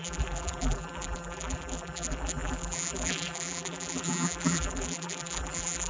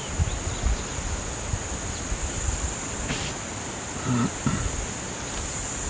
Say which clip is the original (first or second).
second